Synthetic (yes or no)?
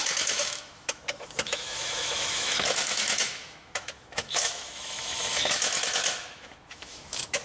yes